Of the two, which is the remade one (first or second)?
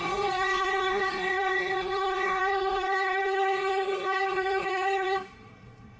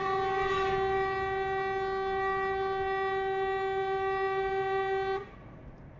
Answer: first